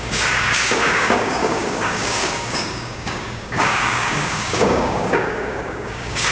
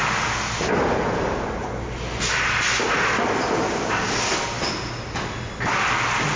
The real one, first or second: second